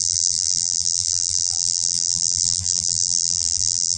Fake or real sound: fake